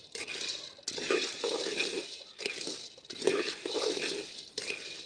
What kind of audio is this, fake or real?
real